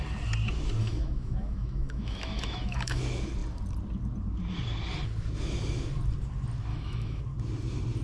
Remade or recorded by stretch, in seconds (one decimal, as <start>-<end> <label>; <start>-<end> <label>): 0.0-0.8 recorded; 0.8-3.0 remade; 3.0-6.7 recorded; 6.7-7.2 remade; 7.2-8.0 recorded